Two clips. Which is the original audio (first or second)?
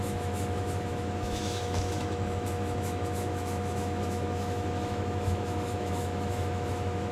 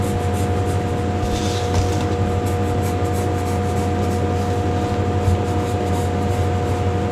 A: second